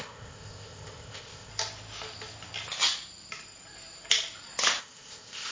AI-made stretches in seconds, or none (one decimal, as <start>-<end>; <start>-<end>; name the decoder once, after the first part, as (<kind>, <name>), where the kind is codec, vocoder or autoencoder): 0.0-1.5 (codec, ZipCodec); 4.8-5.5